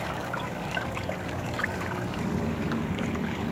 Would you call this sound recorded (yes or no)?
no